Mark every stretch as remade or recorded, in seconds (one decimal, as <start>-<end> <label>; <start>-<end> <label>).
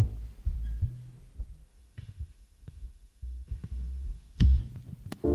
0.0-1.7 recorded; 1.7-4.6 remade; 4.6-5.3 recorded